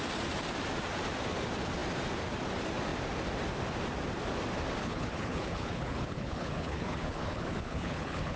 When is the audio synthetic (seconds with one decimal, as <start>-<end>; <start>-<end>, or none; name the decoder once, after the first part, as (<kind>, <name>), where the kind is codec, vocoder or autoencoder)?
4.8-8.4 (codec, HILCodec)